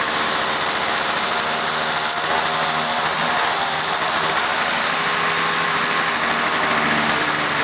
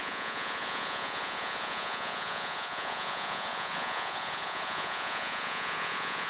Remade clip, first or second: second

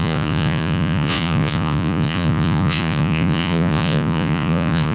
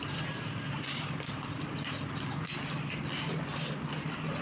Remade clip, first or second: first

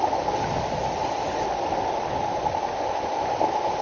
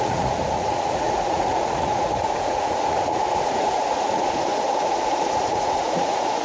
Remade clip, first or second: second